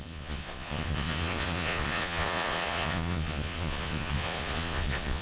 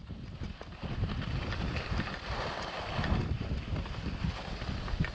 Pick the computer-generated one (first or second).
first